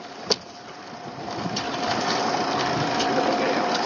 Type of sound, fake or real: real